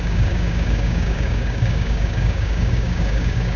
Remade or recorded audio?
remade